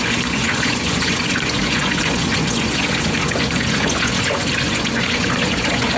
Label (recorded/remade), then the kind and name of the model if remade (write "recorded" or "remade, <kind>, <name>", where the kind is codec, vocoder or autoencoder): remade, vocoder, Vocos